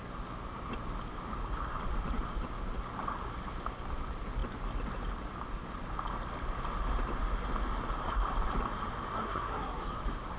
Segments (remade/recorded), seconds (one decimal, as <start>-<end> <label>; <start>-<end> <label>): 0.0-9.1 recorded; 9.1-10.0 remade; 10.0-10.4 recorded